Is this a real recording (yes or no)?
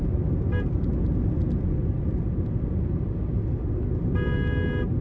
yes